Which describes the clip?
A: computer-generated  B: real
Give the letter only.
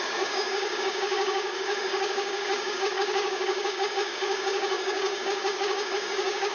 A